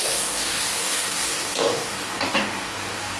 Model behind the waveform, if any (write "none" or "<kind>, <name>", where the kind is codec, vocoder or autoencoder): codec, DAC